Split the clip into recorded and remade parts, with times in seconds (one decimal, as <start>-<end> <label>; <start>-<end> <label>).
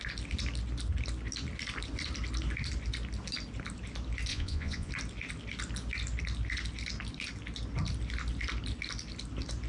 0.0-4.3 recorded; 4.3-4.9 remade; 4.9-9.7 recorded